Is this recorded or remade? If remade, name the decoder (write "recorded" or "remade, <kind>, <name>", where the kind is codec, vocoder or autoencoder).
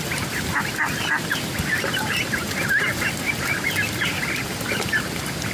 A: recorded